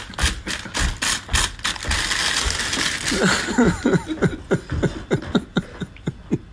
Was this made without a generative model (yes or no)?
yes